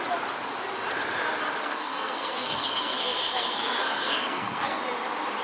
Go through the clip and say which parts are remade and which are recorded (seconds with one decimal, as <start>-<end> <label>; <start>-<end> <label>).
0.0-1.6 recorded; 1.6-4.8 remade; 4.8-5.4 recorded

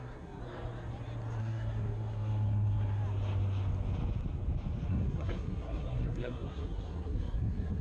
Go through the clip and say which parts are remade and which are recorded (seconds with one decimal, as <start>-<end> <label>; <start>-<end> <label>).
0.0-0.4 remade; 0.4-1.4 recorded; 1.4-3.0 remade; 3.0-4.9 recorded; 4.9-7.8 remade

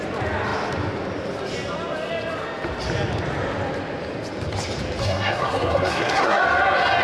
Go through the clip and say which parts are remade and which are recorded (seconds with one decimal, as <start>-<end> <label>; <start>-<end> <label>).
0.0-5.0 recorded; 5.0-6.4 remade; 6.4-7.0 recorded

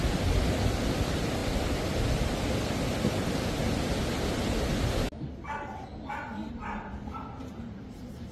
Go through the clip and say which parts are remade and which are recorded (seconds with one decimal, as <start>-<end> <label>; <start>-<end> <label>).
0.0-8.3 recorded